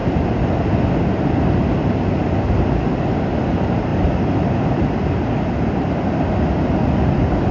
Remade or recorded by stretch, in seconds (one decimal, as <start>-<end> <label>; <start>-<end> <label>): 0.0-7.5 recorded